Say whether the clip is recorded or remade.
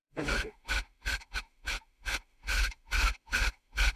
remade